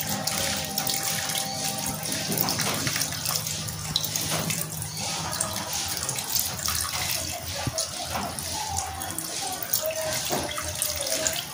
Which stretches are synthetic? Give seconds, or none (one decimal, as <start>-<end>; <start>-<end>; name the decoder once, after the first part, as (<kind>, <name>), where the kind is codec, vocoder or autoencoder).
none

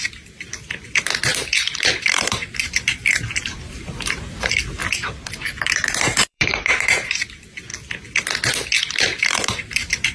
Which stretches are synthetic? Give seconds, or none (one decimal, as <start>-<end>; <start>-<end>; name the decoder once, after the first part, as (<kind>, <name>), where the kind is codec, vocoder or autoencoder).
0.0-4.8 (vocoder, BigVGAN v2); 5.6-7.7; 8.8-10.1